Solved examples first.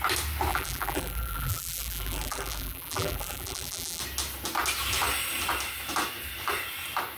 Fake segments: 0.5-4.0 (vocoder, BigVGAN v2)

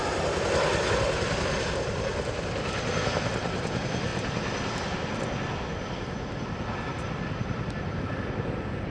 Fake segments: none

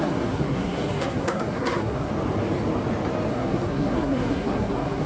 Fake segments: 0.0-2.1 (codec, SNAC); 3.3-5.1

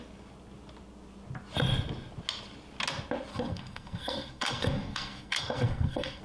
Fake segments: 3.3-6.2 (codec, SNAC)

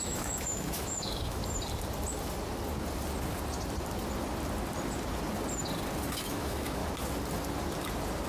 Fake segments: 0.0-1.4 (autoencoder, DAC-VAE); 6.1-6.8